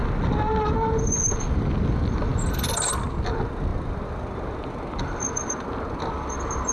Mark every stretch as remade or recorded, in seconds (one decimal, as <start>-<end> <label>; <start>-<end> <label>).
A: 0.0-6.7 recorded